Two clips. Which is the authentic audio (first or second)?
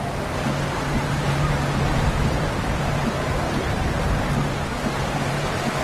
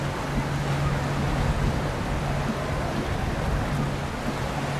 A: second